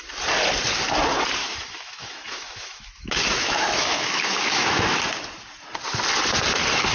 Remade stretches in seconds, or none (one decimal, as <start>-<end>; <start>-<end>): 1.4-5.0